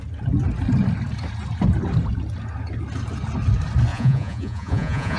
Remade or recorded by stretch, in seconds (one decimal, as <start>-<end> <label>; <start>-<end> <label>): 0.0-3.9 recorded; 3.9-5.2 remade